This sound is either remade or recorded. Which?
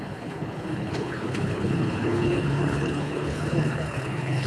remade